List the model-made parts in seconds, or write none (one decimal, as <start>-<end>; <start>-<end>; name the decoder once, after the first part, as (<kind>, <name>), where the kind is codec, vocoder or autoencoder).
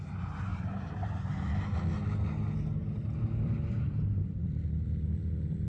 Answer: 0.5-1.5 (vocoder, BigVGAN v2)